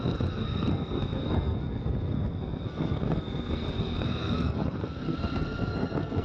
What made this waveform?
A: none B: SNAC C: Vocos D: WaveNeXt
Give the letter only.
B